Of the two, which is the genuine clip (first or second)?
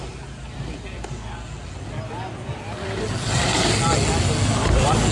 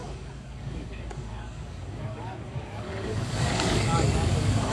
first